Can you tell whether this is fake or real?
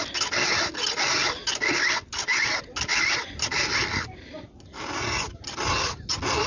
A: real